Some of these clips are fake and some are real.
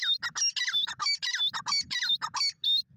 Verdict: real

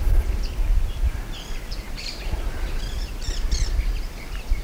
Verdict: fake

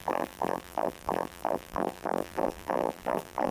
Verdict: fake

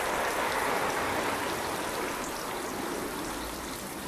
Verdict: fake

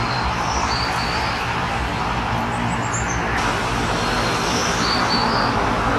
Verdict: real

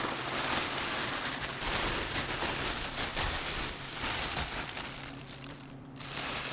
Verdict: fake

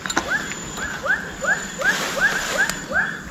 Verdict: real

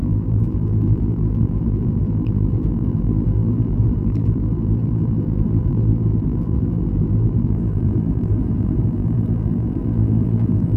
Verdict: fake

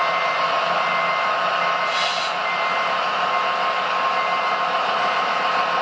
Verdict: real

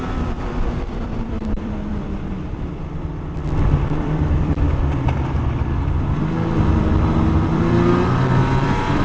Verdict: fake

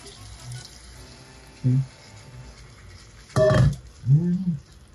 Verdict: real